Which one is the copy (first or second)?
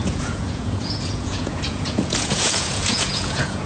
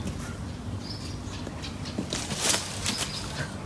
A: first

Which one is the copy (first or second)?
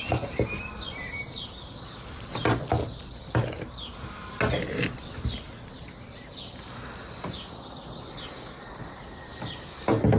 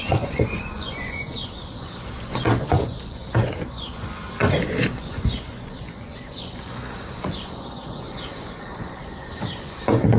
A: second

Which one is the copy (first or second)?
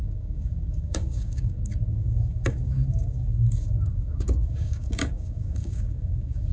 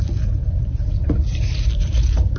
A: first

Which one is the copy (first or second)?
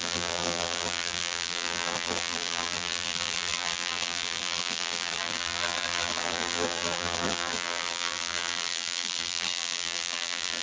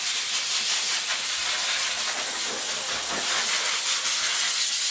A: first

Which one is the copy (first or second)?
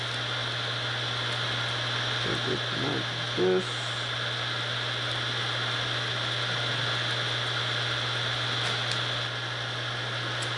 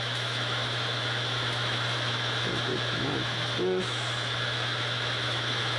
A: second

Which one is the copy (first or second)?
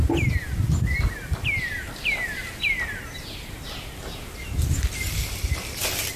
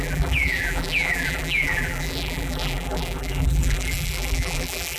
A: second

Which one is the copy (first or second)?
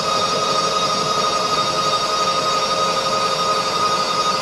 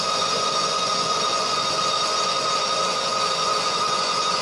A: second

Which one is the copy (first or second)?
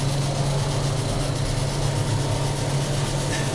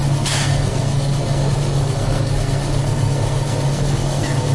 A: second